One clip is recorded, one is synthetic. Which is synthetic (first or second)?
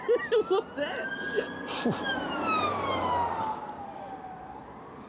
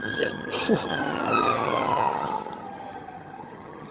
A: second